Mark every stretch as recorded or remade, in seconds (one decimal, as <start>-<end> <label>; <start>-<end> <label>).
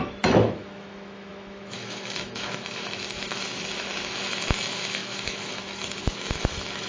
0.0-6.9 remade